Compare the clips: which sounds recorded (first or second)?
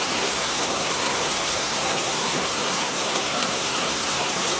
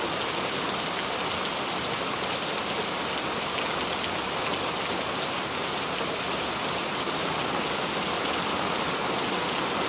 second